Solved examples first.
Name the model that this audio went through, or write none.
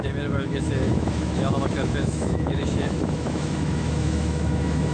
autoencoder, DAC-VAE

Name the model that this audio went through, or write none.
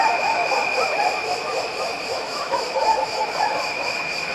autoencoder, DAC-VAE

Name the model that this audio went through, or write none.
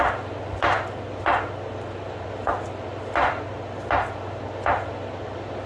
none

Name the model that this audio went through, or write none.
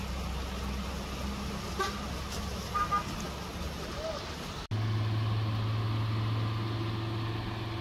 none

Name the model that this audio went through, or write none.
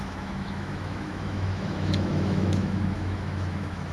autoencoder, DAC-VAE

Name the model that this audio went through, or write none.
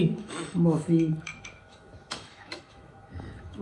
autoencoder, DAC-VAE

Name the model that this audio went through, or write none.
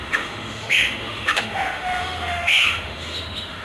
autoencoder, DAC-VAE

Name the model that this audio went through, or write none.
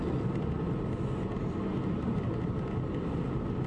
none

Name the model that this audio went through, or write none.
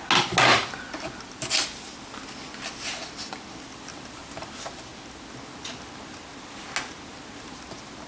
none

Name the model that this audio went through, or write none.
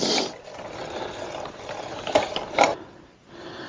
none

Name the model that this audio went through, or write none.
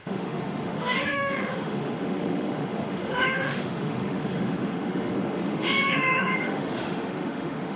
autoencoder, DAC-VAE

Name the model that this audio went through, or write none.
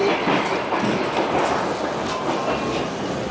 none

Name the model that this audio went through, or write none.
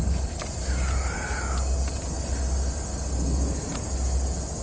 none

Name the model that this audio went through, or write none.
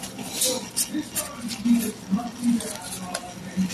none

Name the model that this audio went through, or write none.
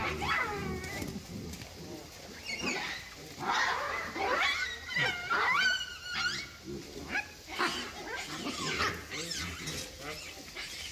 none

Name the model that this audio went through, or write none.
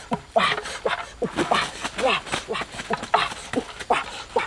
none